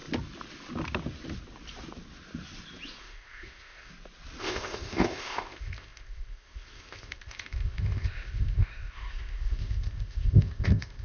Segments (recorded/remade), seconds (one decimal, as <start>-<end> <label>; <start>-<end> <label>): 0.0-3.0 recorded; 3.0-3.9 remade; 3.9-4.4 recorded; 4.4-11.0 remade